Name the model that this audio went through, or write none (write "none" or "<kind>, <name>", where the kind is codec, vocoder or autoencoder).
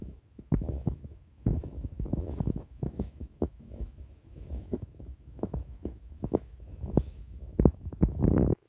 autoencoder, DAC-VAE